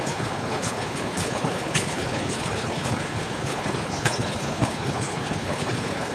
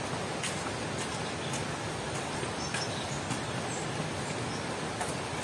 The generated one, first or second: first